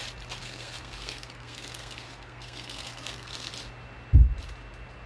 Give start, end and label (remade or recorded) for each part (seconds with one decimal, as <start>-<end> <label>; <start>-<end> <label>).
0.0-0.4 recorded; 0.4-3.5 remade; 3.5-5.1 recorded